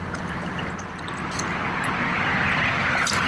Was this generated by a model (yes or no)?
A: no